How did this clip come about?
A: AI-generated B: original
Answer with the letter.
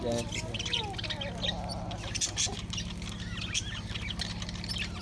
B